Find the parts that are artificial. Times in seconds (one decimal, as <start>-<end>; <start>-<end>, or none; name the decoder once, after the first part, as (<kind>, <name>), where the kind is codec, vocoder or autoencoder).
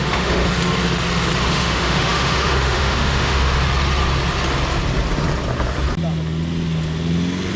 0.0-0.4 (autoencoder, DAC-VAE); 1.5-3.6